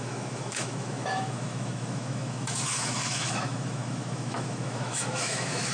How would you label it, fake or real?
fake